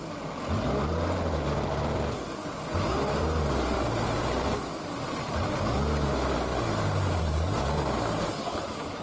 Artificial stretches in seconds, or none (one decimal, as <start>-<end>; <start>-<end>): none